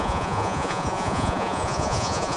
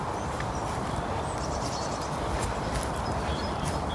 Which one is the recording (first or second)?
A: second